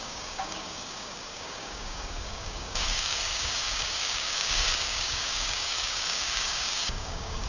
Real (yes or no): no